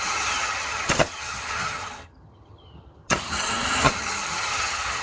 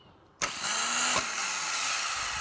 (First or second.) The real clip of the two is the second